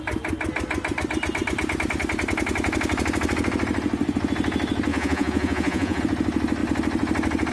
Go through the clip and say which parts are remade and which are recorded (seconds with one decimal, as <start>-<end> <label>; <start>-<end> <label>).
0.0-4.9 recorded; 4.9-6.0 remade; 6.0-7.5 recorded